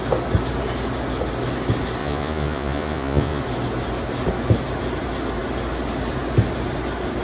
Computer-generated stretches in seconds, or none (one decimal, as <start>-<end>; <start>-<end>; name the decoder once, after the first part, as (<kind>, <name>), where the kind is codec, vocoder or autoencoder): 2.0-3.4 (vocoder, Vocos)